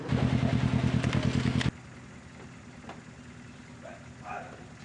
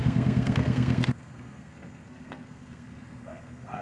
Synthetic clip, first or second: second